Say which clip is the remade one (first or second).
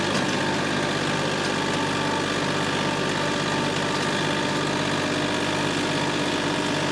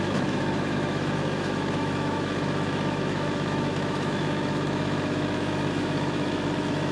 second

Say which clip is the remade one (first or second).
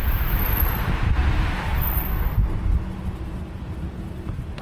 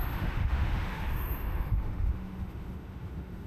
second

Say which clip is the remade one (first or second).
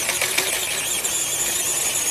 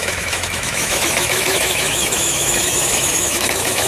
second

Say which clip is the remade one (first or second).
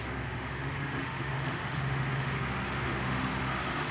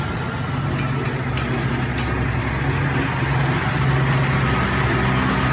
first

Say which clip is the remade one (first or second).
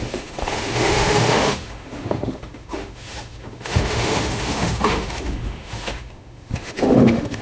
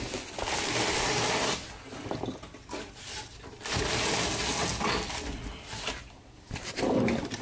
first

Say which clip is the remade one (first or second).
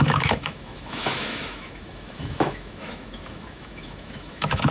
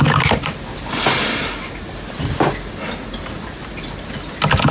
first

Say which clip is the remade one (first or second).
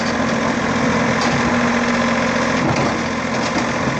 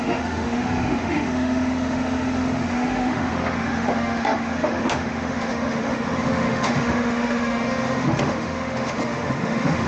second